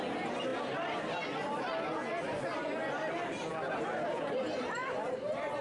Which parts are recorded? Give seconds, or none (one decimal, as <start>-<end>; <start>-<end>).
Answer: 0.0-5.6